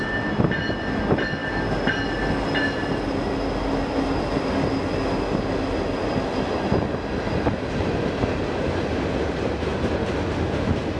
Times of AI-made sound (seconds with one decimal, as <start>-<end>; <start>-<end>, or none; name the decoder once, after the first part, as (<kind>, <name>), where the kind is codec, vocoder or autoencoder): none